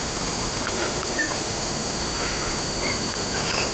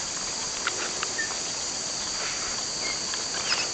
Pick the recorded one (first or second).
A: second